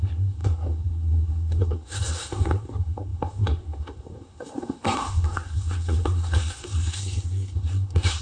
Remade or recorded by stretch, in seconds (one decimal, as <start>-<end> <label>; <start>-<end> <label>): 0.0-8.2 remade